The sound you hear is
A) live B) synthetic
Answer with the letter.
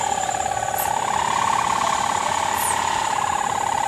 A